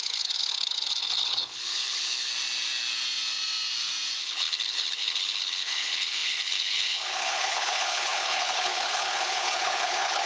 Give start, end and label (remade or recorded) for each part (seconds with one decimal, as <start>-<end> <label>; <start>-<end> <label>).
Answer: 0.0-2.3 remade; 2.3-4.2 recorded; 4.2-10.3 remade